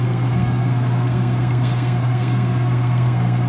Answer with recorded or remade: remade